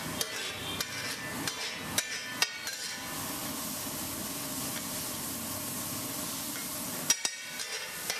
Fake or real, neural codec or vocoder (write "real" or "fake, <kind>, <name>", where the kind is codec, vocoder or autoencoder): real